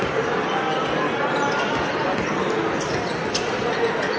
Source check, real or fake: real